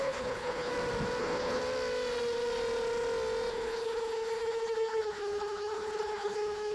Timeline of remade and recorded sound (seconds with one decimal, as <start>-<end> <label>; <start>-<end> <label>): 0.0-0.7 remade; 0.7-1.2 recorded; 1.2-1.6 remade; 1.6-3.5 recorded; 3.5-6.7 remade